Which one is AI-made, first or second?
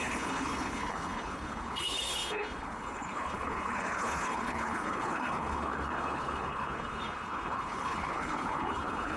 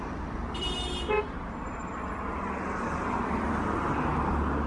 first